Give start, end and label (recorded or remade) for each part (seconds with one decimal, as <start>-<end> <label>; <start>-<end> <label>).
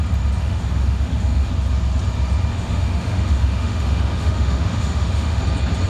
0.0-0.4 recorded; 0.4-1.5 remade; 1.5-2.5 recorded; 2.5-5.4 remade; 5.4-5.9 recorded